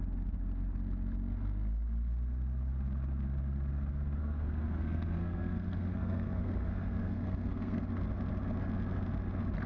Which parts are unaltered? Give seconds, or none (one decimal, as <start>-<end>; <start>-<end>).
0.0-4.2; 7.9-9.7